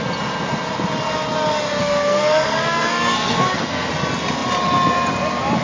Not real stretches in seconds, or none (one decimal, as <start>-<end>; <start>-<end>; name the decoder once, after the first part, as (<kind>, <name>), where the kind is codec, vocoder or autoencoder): 1.8-3.9 (codec, SNAC)

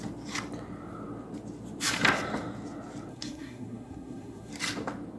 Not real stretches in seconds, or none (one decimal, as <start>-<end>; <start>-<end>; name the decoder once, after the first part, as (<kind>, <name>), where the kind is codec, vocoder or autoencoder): 3.1-4.5 (codec, SNAC)

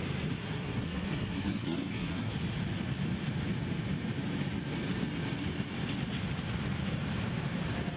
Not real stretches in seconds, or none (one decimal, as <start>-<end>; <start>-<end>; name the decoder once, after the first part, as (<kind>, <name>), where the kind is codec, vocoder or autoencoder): 0.4-2.3 (codec, SNAC)

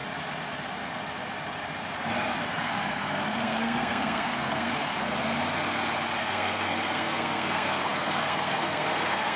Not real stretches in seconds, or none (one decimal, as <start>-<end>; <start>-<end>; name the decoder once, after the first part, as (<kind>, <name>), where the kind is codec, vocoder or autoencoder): 2.6-4.7 (codec, SNAC); 6.2-9.4

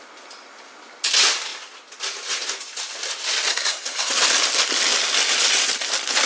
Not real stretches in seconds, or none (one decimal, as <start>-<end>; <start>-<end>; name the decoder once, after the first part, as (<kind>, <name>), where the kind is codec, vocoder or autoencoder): 3.5-4.2 (codec, SNAC)

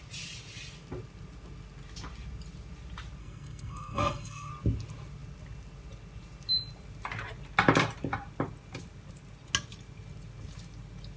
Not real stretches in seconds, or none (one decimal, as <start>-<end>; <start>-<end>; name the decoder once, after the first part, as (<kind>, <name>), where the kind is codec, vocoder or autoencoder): 3.2-4.5 (codec, SNAC)

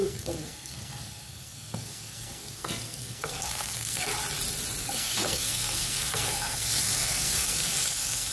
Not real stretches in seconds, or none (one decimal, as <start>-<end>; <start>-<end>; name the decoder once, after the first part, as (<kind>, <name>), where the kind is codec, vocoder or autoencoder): 0.0-4.1 (codec, SNAC); 4.8-8.3